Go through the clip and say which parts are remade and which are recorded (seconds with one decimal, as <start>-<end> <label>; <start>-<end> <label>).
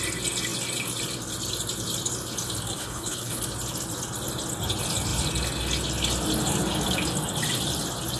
0.0-2.8 recorded; 2.8-3.4 remade; 3.4-8.2 recorded